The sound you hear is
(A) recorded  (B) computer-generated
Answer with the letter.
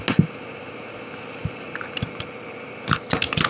A